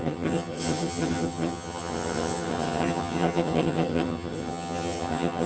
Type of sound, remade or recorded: remade